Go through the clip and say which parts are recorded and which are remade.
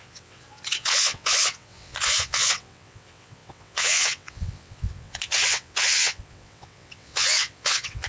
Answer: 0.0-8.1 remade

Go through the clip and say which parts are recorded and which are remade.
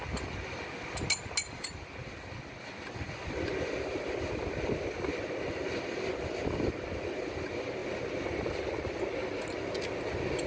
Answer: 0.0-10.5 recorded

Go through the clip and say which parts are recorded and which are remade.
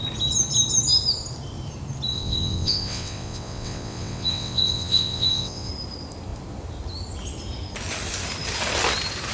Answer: 0.0-2.1 recorded; 2.1-5.7 remade; 5.7-9.3 recorded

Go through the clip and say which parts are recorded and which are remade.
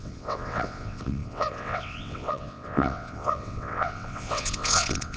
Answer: 0.0-5.2 remade